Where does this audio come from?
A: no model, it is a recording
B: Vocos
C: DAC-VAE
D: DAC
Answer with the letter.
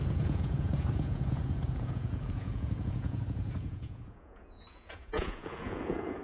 B